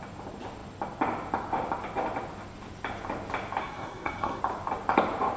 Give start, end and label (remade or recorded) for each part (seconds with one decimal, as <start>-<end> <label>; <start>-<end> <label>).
0.0-3.6 recorded; 3.6-4.4 remade; 4.4-5.4 recorded